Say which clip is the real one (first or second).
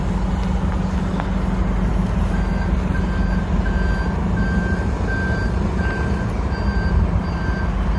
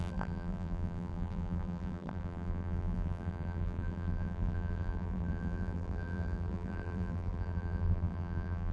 first